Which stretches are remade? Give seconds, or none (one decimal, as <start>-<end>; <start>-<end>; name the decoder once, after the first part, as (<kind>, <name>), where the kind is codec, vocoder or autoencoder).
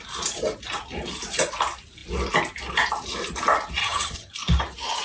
3.8-4.3 (vocoder, HiFi-GAN)